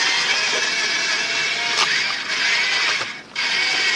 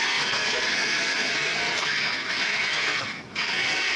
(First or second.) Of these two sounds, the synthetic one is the second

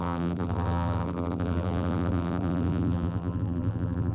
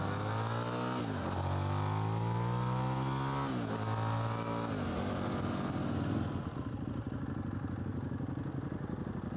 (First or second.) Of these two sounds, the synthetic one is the first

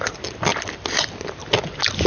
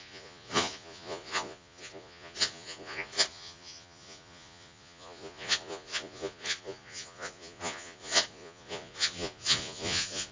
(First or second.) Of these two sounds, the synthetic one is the second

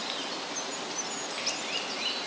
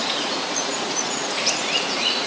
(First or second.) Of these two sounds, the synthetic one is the second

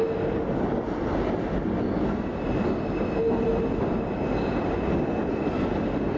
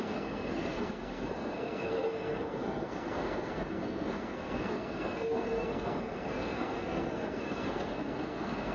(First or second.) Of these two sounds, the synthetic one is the second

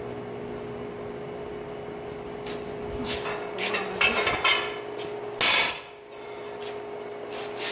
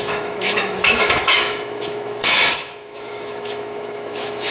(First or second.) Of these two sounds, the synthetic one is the second